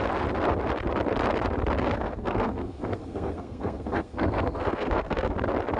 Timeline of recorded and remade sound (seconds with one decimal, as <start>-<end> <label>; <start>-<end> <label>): 0.0-1.8 recorded; 1.8-5.3 remade; 5.3-5.8 recorded